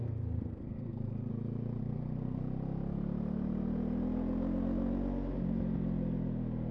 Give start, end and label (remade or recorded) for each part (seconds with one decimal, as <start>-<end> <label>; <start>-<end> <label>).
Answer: 0.0-1.3 remade; 1.3-1.8 recorded; 1.8-2.4 remade; 2.4-6.7 recorded